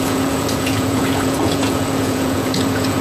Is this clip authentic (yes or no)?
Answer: no